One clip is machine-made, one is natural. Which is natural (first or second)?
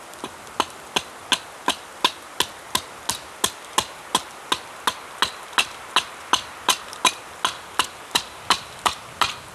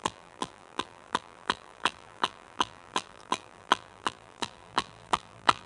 first